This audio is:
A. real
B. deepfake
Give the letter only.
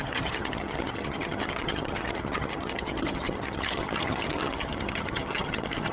B